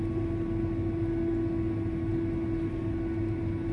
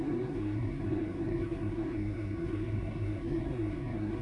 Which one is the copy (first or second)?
second